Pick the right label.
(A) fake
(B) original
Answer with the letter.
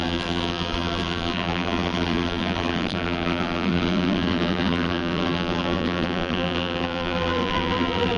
A